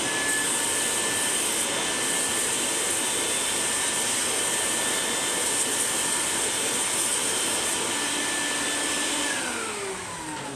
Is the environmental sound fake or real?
real